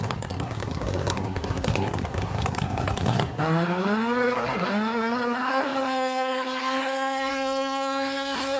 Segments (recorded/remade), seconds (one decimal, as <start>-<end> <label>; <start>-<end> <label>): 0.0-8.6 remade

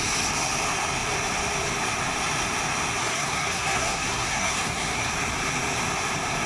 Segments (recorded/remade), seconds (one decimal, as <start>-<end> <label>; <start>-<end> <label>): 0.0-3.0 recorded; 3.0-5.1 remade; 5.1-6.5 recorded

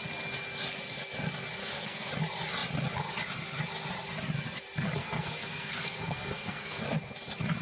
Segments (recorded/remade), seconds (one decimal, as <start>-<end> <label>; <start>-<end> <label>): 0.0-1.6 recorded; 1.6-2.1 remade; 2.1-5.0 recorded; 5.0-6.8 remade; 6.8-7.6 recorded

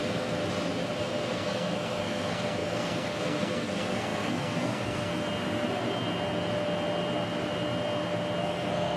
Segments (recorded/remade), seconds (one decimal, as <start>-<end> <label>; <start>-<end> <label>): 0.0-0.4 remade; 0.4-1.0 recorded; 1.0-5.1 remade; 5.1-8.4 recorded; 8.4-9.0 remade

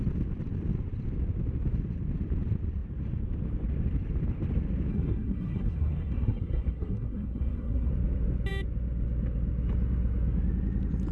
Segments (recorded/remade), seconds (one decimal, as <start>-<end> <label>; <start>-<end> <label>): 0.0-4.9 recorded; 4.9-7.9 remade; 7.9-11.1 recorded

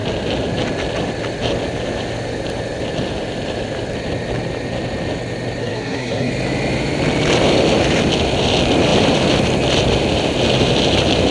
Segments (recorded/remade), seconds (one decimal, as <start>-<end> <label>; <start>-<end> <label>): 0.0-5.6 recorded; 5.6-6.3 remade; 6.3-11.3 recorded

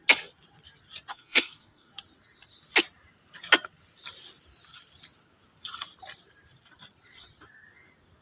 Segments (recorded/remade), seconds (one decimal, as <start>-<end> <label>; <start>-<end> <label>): 0.0-1.1 recorded; 1.1-1.9 remade; 1.9-8.2 recorded

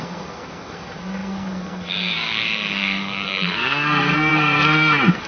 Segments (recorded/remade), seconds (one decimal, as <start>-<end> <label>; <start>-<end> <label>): 0.0-5.3 remade